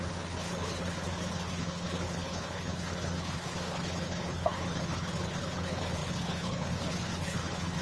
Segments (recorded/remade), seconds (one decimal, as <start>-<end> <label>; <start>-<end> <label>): 0.0-7.8 remade